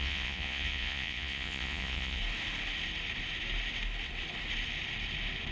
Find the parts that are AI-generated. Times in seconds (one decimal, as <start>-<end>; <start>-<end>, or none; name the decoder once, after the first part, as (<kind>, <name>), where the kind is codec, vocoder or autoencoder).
0.0-2.2 (vocoder, Vocos)